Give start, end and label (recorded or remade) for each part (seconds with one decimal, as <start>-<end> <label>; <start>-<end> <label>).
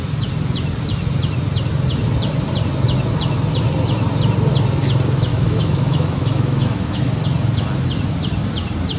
0.0-5.3 recorded; 5.3-7.1 remade; 7.1-9.0 recorded